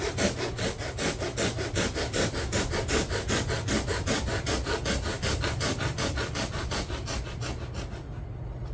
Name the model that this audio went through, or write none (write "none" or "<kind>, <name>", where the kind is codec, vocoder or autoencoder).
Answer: none